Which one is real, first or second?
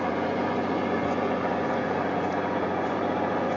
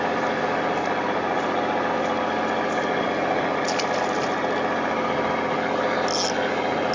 second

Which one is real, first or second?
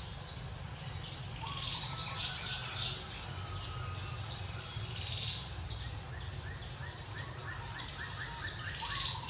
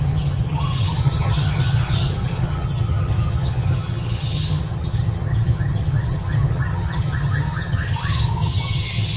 first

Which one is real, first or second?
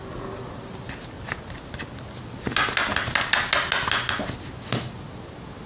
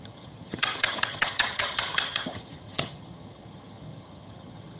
first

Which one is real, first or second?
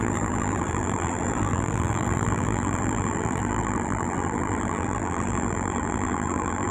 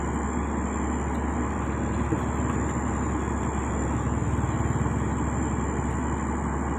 second